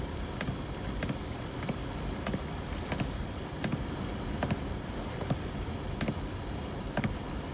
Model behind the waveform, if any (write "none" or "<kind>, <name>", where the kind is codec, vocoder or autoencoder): vocoder, BigVGAN v2